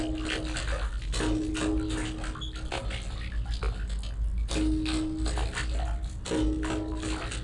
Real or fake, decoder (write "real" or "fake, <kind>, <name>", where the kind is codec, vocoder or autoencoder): real